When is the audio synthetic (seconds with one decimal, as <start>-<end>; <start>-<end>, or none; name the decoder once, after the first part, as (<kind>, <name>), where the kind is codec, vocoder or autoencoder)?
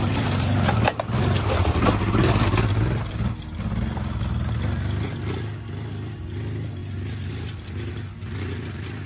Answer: none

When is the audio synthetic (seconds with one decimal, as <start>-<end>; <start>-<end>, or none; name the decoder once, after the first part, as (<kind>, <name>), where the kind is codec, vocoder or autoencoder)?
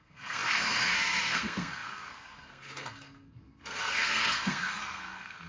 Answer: 0.0-5.5 (codec, SNAC)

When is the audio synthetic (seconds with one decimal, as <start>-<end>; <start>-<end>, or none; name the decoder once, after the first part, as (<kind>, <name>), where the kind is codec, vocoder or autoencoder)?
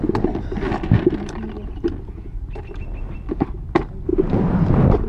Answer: none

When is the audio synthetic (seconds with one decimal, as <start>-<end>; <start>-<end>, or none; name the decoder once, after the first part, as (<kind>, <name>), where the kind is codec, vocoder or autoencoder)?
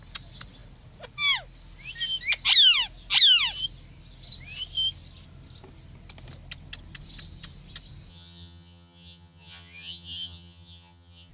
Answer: 8.1-11.3 (vocoder, HiFi-GAN)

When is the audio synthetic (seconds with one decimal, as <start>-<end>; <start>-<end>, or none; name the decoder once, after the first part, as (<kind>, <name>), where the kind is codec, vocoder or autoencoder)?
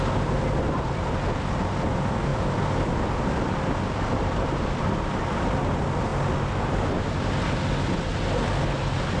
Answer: none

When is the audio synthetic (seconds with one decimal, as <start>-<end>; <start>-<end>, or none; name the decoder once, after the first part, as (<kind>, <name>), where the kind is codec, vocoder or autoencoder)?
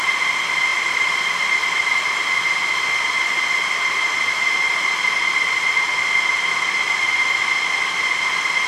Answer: 0.7-2.2 (vocoder, BigVGAN v2)